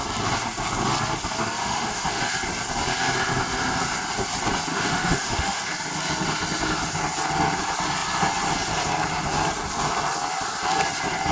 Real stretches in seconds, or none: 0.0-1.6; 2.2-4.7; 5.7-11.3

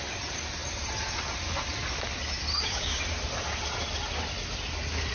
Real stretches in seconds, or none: 0.0-2.5; 3.0-5.1

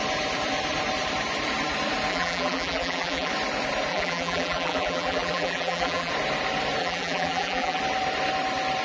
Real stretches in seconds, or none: 0.0-2.1; 3.3-3.9; 6.1-6.8; 7.8-8.8

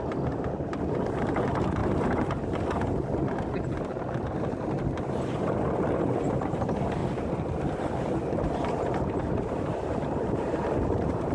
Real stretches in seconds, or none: 1.8-6.2; 7.0-8.4

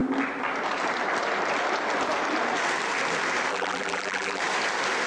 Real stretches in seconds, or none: 0.0-3.5; 4.4-5.1

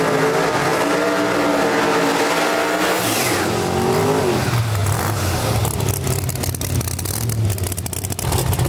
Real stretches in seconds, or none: 0.0-8.7

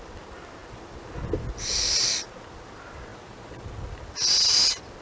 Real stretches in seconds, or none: 0.0-5.0